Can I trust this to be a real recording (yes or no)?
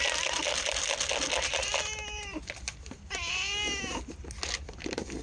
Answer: yes